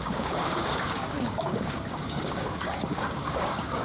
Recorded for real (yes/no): no